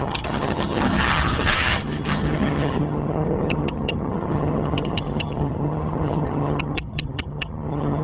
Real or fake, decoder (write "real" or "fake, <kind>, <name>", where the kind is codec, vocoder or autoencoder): fake, vocoder, HiFi-GAN